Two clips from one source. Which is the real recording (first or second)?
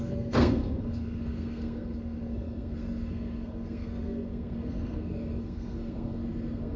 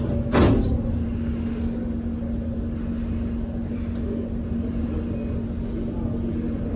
second